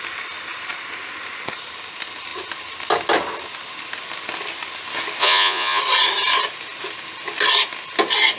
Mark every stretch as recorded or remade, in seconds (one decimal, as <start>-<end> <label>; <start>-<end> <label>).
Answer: 0.0-5.2 recorded; 5.2-5.8 remade; 5.8-8.4 recorded